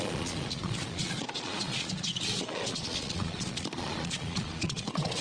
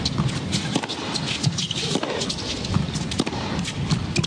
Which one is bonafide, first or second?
second